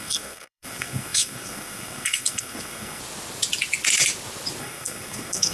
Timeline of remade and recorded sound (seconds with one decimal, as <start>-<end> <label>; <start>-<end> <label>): 0.0-3.0 remade; 3.0-4.6 recorded; 4.6-5.5 remade